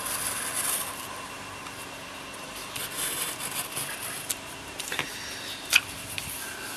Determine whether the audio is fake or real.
real